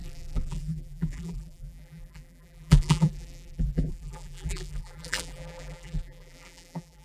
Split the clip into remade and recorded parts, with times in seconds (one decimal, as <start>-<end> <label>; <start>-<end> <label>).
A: 0.0-7.0 remade